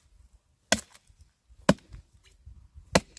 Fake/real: real